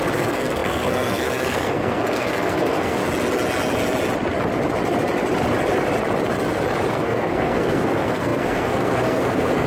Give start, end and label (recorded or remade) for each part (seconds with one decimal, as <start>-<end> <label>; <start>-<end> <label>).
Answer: 0.0-3.0 remade; 3.0-6.9 recorded; 6.9-9.7 remade